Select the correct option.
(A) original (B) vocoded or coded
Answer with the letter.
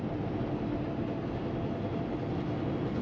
A